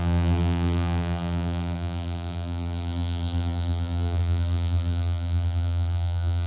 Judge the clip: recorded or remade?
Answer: remade